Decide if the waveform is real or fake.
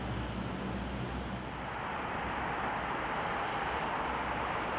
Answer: real